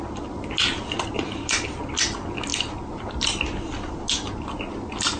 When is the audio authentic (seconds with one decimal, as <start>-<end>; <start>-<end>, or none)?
0.0-5.2